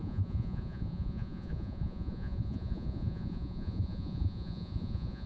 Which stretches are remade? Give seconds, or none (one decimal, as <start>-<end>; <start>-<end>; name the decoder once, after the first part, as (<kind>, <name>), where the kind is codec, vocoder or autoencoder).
0.0-5.3 (vocoder, Vocos)